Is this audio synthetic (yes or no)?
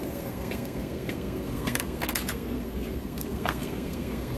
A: yes